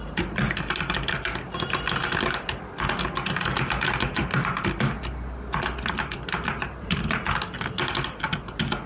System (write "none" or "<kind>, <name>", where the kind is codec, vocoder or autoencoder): none